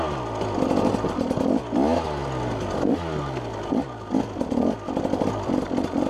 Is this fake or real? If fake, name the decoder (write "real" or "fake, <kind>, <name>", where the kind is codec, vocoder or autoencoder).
real